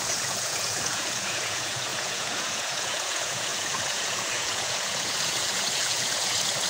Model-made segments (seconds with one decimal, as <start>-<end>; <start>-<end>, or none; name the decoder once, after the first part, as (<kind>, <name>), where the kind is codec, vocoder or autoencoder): 0.0-6.7 (vocoder, Vocos)